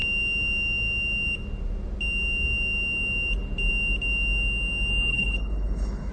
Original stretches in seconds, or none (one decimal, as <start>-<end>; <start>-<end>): 0.0-5.1